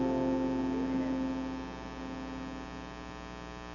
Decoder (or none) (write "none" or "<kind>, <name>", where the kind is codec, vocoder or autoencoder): none